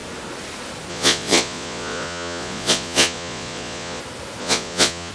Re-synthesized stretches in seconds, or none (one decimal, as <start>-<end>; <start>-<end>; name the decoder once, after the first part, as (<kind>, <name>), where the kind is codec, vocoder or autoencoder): 0.9-4.0 (vocoder, Vocos); 4.4-5.1